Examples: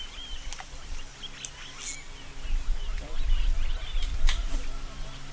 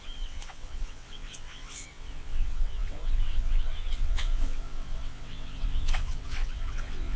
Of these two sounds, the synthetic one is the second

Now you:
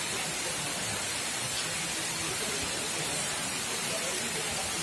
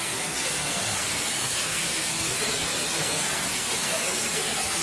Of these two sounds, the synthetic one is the second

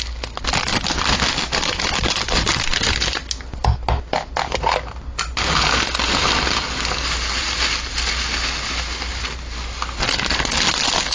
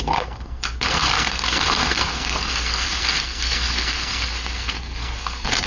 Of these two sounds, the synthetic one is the second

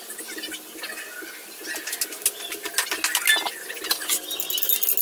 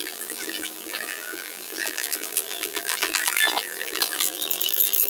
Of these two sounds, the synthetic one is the second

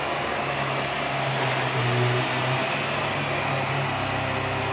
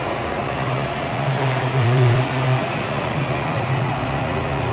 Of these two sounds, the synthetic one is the second